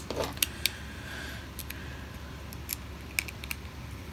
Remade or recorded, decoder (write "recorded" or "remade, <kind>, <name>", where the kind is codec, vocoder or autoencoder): recorded